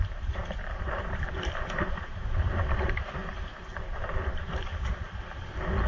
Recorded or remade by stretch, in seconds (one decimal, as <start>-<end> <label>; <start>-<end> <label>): 0.0-3.2 remade; 3.2-3.7 recorded; 3.7-4.7 remade; 4.7-5.9 recorded